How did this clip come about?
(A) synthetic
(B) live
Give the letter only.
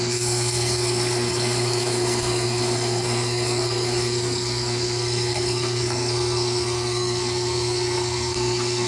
A